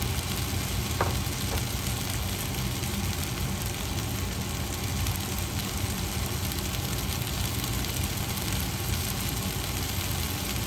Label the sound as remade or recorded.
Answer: recorded